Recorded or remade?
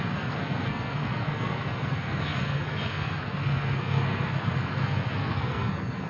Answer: remade